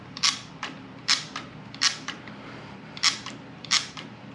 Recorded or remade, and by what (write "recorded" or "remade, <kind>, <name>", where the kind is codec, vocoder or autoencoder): remade, vocoder, BigVGAN v2